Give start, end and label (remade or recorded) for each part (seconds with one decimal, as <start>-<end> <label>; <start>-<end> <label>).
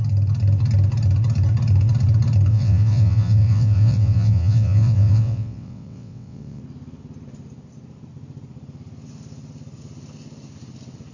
0.0-2.5 recorded; 2.5-6.6 remade; 6.6-11.1 recorded